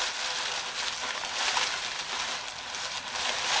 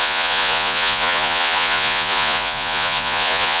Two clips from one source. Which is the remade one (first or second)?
second